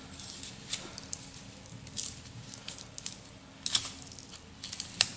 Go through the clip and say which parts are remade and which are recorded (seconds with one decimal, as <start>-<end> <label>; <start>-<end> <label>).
0.0-5.2 recorded